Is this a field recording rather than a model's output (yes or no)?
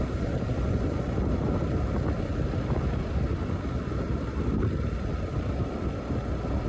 yes